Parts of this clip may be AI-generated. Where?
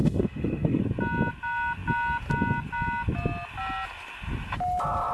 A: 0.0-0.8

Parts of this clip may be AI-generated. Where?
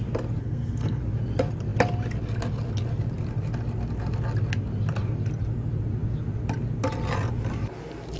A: 0.4-1.0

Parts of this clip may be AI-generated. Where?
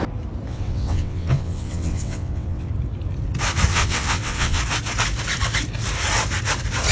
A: 0.5-2.7; 3.7-4.6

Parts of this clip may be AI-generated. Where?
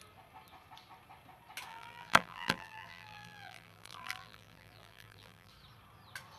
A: 1.7-5.5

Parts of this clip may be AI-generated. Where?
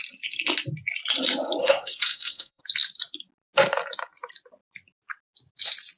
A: 1.6-2.6